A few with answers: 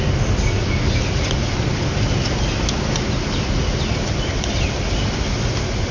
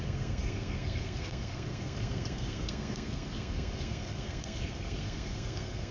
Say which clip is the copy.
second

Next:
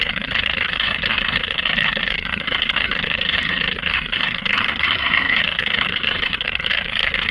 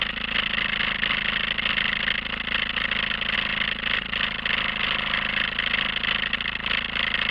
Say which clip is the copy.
first